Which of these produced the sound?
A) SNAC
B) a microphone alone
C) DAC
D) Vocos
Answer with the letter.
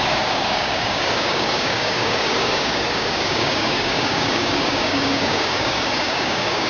C